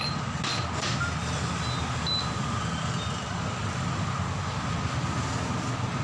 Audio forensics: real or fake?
real